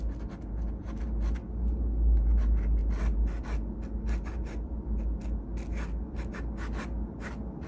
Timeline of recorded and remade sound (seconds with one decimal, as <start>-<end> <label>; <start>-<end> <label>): 0.0-7.7 recorded